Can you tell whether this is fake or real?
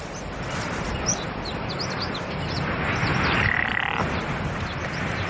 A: real